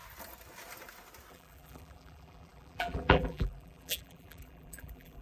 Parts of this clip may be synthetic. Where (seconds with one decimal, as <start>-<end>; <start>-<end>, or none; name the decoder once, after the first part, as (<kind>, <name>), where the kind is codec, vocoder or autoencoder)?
1.3-5.2 (vocoder, BigVGAN v2)